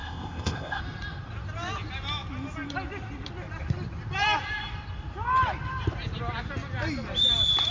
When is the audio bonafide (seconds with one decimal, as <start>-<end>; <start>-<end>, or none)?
0.8-7.7